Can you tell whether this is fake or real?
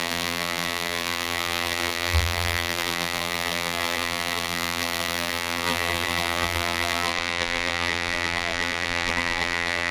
fake